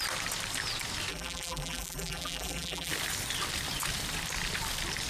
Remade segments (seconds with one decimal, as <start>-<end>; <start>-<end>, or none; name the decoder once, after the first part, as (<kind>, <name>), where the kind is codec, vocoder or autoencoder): 1.1-2.9 (vocoder, BigVGAN v2)